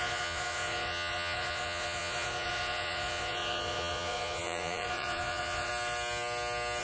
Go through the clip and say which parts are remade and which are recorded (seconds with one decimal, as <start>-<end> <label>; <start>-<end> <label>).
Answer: 0.0-5.7 remade; 5.7-6.8 recorded